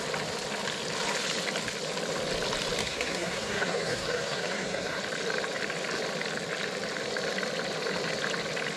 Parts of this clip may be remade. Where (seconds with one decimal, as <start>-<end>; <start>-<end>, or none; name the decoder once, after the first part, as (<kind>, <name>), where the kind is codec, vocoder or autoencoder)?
2.8-5.0 (codec, SNAC)